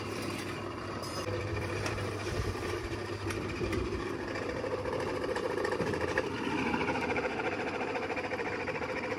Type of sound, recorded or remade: remade